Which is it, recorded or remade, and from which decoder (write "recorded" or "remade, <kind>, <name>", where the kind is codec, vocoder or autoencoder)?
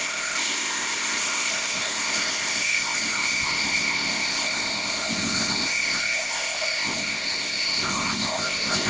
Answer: remade, codec, ZipCodec